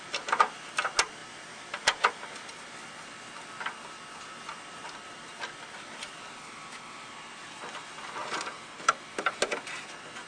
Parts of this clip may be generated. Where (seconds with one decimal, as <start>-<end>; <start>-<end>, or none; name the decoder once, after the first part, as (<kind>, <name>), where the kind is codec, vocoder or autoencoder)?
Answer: 1.2-2.2 (vocoder, BigVGAN v2); 8.2-8.9